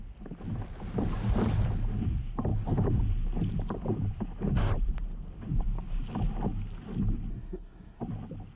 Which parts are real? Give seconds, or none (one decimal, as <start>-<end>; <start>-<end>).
0.0-7.3; 8.0-8.6